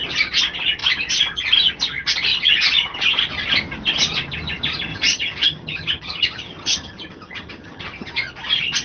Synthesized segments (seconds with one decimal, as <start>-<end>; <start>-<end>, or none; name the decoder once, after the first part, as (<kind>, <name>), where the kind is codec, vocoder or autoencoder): 4.9-8.1 (vocoder, HiFi-GAN)